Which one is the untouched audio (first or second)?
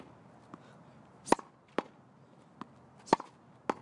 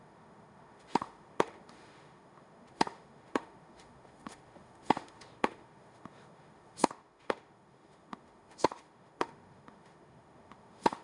first